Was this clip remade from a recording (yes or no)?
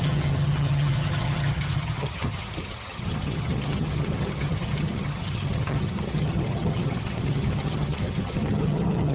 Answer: yes